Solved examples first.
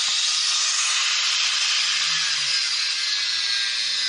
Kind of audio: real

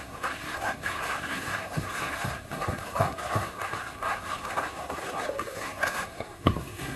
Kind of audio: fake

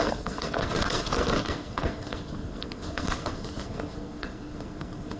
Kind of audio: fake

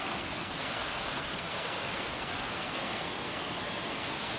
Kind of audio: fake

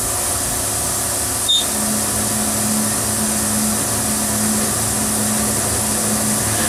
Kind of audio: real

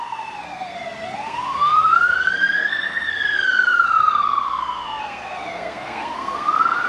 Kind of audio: fake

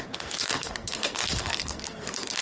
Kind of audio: fake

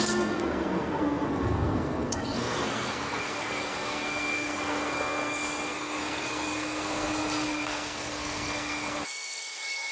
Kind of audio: fake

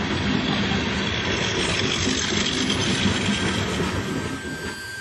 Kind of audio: real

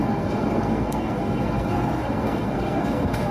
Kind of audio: fake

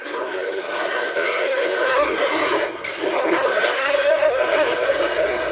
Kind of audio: fake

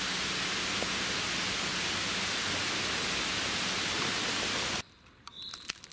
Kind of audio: real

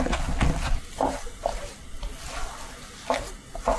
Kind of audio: real